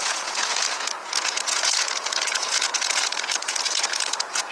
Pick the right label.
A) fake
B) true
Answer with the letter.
A